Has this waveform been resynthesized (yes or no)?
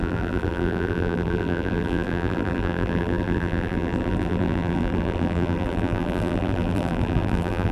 yes